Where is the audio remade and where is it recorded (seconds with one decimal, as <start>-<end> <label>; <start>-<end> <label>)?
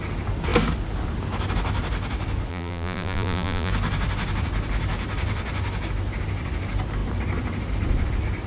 0.0-2.5 recorded; 2.5-3.7 remade; 3.7-8.5 recorded